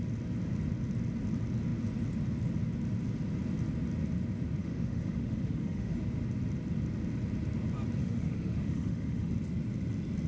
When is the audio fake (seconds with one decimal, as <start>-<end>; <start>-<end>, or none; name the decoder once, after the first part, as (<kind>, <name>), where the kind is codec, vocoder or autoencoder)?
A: 4.6-6.0 (autoencoder, DAC-VAE); 8.0-9.3